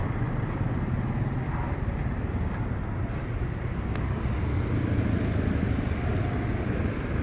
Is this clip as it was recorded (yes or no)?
yes